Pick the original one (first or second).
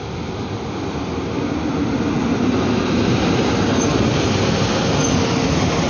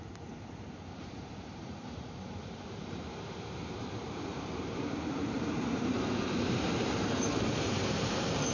first